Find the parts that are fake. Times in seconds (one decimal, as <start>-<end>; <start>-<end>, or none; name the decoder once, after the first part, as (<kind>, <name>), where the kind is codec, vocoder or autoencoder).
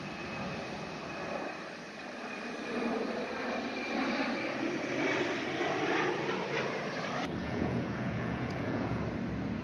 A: 7.4-9.0 (vocoder, Vocos)